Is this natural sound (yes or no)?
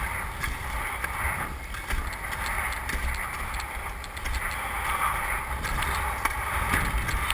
yes